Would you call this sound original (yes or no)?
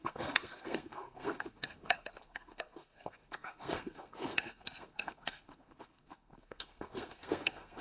no